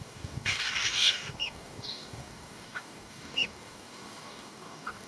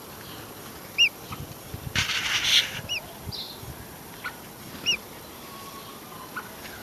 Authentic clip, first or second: second